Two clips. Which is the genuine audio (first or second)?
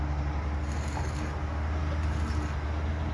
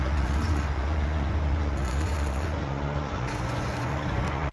first